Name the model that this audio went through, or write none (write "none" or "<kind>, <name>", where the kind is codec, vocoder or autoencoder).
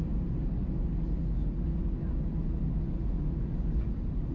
none